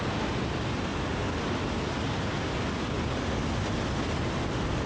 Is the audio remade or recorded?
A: recorded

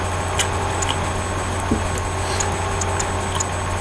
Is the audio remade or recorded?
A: recorded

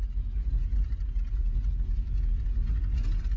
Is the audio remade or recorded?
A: recorded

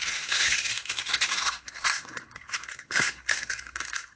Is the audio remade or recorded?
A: remade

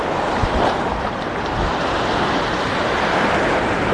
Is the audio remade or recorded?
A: remade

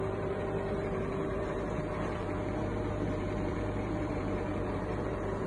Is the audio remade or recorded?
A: remade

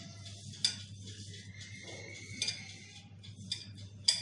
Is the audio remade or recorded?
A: recorded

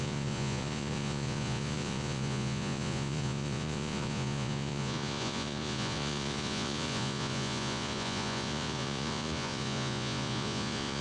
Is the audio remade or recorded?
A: remade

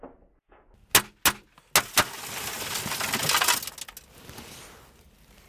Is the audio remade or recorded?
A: recorded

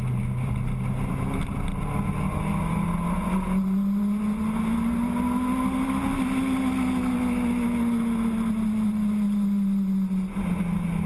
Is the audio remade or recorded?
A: recorded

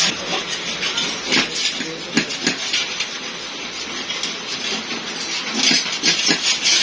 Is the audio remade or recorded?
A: recorded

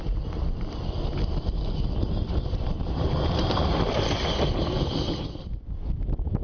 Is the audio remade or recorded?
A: recorded